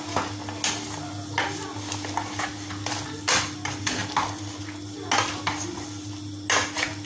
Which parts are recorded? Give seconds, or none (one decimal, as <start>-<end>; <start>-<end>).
0.0-7.1